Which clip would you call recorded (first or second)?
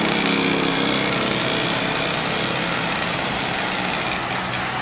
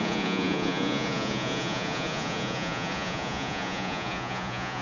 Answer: first